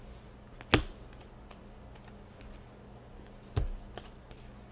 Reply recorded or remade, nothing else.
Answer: recorded